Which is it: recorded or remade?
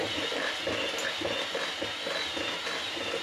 recorded